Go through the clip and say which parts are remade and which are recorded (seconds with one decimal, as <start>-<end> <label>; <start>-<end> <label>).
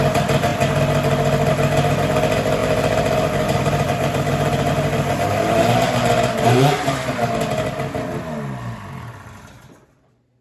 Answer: 0.0-2.6 recorded; 2.6-7.2 remade; 7.2-10.4 recorded